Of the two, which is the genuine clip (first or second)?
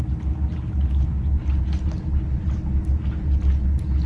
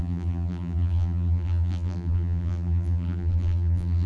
first